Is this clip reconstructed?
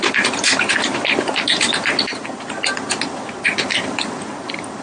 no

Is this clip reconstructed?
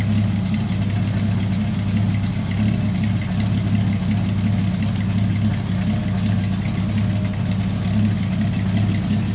no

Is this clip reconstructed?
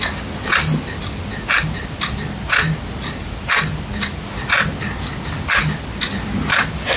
no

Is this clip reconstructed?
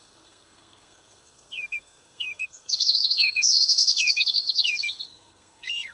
yes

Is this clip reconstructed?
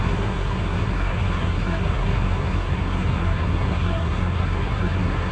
yes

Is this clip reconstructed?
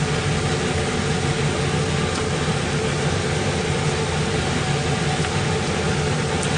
no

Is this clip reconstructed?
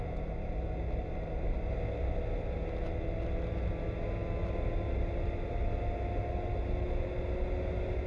no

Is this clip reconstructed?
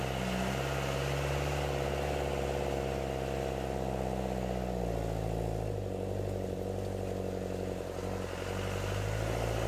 no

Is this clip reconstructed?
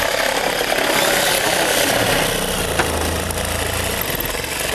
no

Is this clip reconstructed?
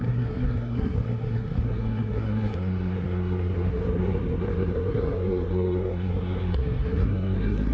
yes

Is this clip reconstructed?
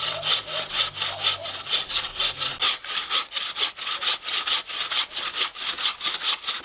no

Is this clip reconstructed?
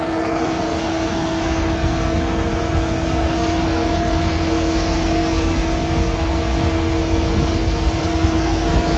yes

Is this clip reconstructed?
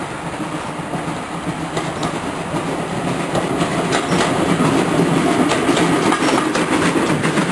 no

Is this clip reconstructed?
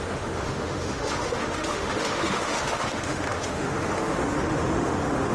yes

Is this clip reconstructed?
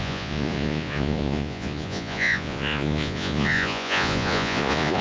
yes